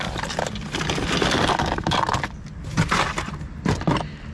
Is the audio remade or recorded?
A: recorded